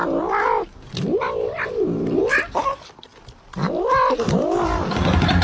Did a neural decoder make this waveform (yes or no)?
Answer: no